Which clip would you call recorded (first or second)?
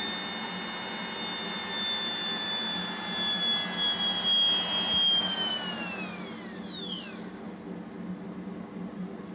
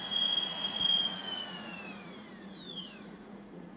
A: first